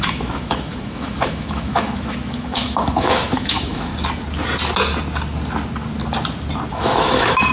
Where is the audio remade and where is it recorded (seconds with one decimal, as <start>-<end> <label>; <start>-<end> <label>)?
0.0-3.9 remade; 3.9-6.7 recorded; 6.7-7.5 remade